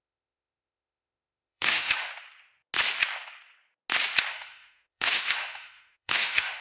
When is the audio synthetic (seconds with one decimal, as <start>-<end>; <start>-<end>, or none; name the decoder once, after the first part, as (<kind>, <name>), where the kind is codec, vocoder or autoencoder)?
0.0-2.1 (autoencoder, DAC-VAE); 4.3-6.6